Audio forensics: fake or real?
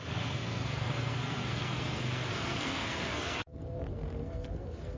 fake